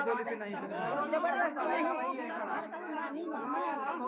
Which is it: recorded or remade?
remade